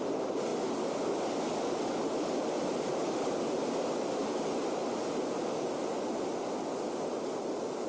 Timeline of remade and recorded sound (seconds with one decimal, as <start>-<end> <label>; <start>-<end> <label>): 0.0-7.9 recorded